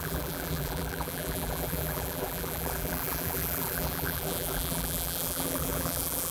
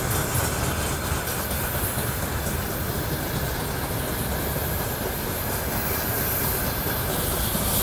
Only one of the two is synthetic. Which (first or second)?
first